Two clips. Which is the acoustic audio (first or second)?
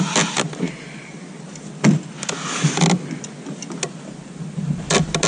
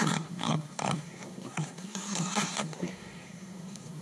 first